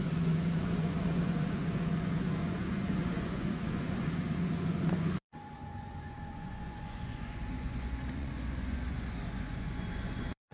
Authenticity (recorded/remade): remade